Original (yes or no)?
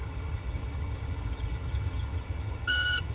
no